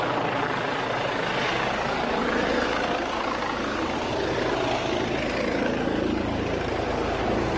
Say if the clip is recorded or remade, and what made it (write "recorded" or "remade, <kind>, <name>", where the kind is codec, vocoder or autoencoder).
recorded